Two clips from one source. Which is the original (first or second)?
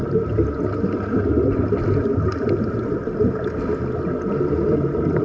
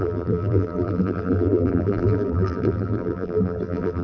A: first